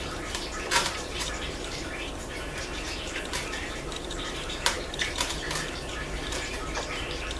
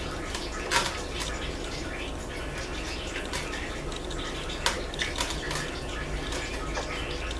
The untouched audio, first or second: second